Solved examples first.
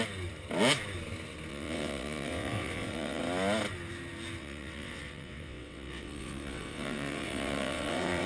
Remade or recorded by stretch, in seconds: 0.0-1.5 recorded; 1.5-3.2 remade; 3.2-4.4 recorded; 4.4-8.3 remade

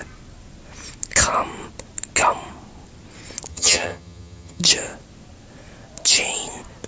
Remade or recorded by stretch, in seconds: 0.0-3.5 recorded; 3.5-4.6 remade; 4.6-6.9 recorded

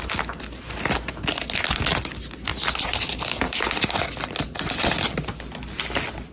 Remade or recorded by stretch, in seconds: 0.0-6.3 recorded

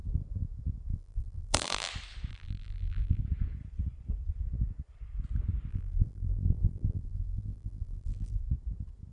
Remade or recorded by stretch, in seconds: 0.0-0.9 recorded; 0.9-1.9 remade; 1.9-2.3 recorded; 2.3-3.2 remade; 3.2-5.7 recorded; 5.7-8.4 remade; 8.4-9.1 recorded